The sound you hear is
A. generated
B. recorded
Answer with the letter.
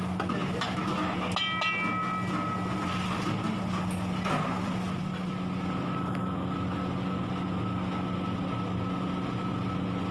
B